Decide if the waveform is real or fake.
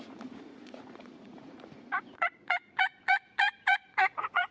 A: fake